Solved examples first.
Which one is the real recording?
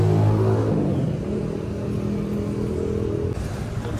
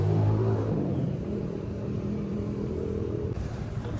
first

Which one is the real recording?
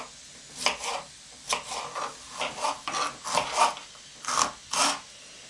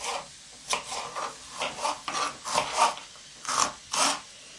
first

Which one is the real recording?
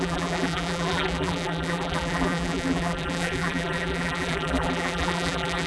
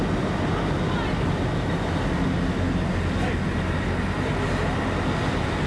second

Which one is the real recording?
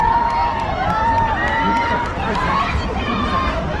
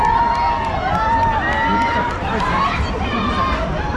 second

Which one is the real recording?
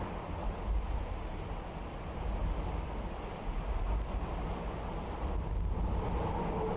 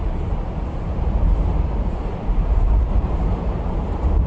first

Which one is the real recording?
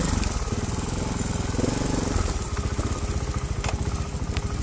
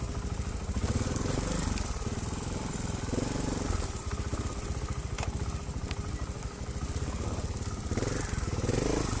first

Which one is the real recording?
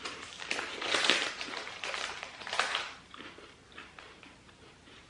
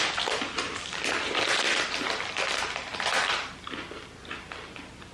second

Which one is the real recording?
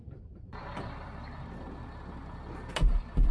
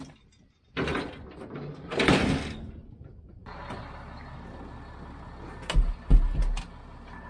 second